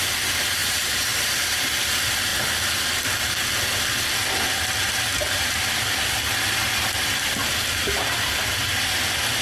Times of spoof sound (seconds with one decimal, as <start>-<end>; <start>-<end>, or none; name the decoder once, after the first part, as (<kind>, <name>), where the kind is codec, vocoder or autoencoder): 0.6-1.6 (vocoder, BigVGAN v2); 5.1-5.7